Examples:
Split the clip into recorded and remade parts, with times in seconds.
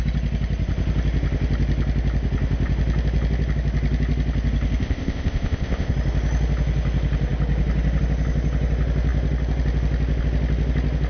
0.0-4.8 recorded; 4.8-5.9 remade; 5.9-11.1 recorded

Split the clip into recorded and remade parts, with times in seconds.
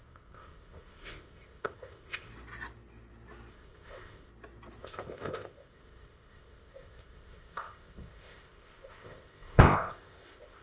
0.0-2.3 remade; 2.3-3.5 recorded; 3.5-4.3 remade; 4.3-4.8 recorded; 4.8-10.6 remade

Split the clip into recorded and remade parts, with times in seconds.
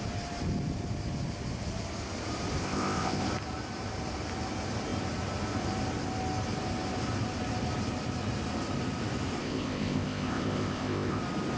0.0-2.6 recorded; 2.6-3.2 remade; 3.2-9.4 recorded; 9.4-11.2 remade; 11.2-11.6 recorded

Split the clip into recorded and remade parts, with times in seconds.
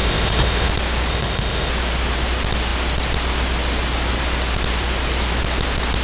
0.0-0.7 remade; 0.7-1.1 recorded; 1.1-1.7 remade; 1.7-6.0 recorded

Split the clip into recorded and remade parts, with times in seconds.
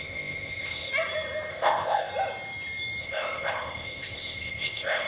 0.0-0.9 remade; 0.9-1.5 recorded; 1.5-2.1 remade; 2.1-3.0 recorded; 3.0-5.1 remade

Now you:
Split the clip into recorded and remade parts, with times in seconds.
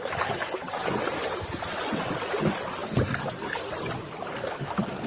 0.0-5.1 recorded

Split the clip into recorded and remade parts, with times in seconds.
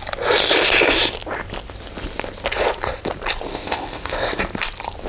0.0-3.5 recorded; 3.5-4.4 remade; 4.4-5.1 recorded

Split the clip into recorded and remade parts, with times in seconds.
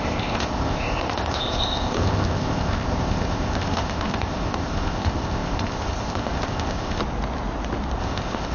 0.0-7.0 remade; 7.0-8.0 recorded; 8.0-8.5 remade